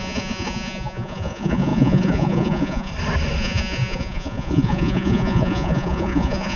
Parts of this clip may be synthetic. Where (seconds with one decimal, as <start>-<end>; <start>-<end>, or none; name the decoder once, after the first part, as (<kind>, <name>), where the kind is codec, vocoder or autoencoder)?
0.0-2.9 (vocoder, Vocos); 3.4-6.6